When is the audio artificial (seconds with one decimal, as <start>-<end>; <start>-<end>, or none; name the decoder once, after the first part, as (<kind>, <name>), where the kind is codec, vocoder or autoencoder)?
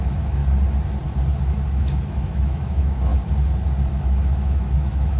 0.0-0.4 (autoencoder, DAC-VAE); 1.4-3.1; 3.9-5.2